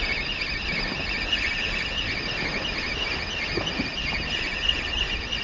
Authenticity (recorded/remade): recorded